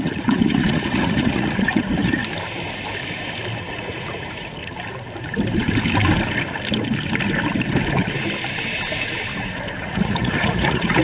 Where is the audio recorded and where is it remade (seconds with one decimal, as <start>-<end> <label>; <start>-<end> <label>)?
0.0-2.2 remade; 2.2-3.7 recorded; 3.7-4.6 remade; 4.6-9.8 recorded; 9.8-11.0 remade